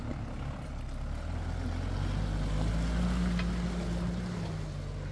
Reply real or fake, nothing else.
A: real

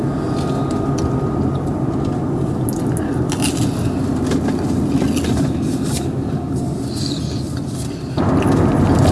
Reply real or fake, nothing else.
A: real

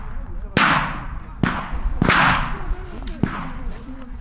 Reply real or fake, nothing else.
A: real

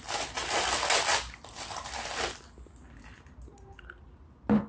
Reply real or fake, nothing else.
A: real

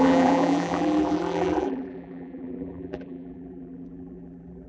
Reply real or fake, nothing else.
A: fake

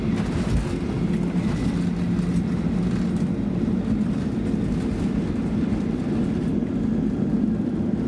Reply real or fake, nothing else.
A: real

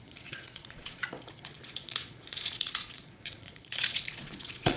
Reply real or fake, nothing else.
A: fake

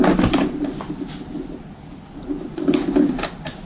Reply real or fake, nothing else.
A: real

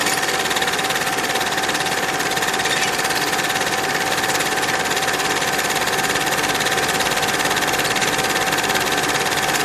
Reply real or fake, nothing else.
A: real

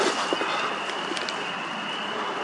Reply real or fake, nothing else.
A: real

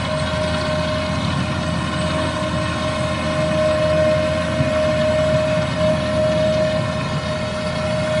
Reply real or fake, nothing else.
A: real